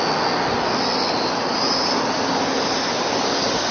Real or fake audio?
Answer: real